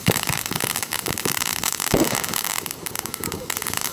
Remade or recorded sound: remade